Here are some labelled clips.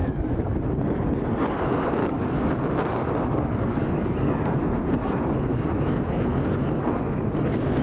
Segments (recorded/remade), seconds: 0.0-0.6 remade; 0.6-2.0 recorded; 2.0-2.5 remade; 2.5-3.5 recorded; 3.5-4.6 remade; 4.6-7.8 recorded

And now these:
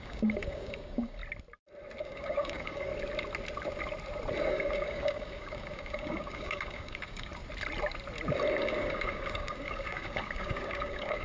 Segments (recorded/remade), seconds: 0.0-1.2 remade; 1.2-2.0 recorded; 2.0-2.9 remade; 2.9-4.5 recorded; 4.5-7.3 remade; 7.3-8.6 recorded; 8.6-11.2 remade

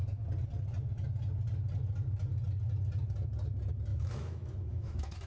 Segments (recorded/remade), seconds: 0.0-3.9 recorded; 3.9-5.3 remade